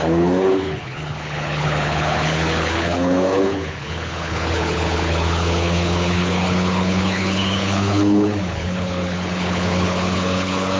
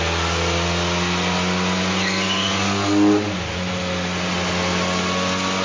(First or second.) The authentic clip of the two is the second